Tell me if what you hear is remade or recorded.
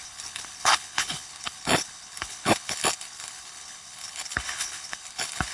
remade